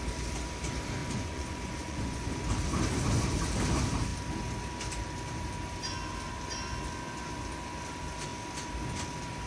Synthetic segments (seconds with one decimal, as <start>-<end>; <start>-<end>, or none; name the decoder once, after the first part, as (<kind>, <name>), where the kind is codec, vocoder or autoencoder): 1.0-2.3 (vocoder, Vocos)